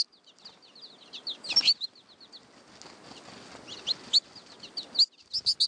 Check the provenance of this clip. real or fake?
real